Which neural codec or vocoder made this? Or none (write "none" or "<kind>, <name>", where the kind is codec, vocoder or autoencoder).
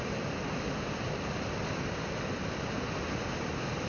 none